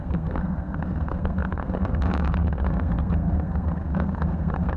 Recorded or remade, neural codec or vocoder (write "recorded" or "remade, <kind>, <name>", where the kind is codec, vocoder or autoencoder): remade, codec, SNAC